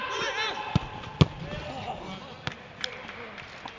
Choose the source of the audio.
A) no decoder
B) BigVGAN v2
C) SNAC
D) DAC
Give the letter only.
A